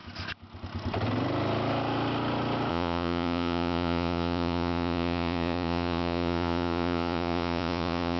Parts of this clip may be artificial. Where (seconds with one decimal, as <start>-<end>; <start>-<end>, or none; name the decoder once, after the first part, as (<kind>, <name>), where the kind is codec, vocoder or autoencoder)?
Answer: 2.7-8.2 (vocoder, Vocos)